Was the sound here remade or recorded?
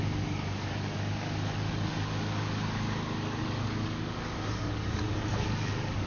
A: remade